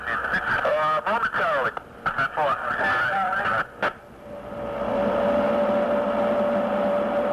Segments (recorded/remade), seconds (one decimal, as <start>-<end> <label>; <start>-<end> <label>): 0.0-7.3 recorded